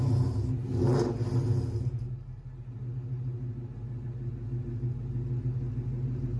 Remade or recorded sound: recorded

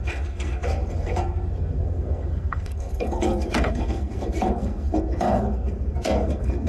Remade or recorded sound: remade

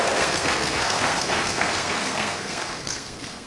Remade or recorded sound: remade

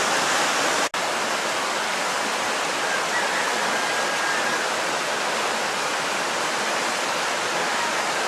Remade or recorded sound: recorded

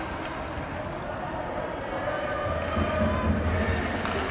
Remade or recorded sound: recorded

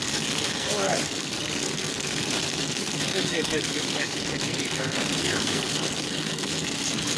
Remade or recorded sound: remade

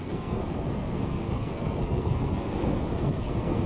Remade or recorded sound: remade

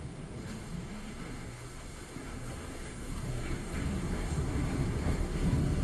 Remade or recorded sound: remade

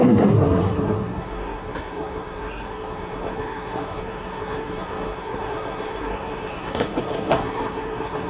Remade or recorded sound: remade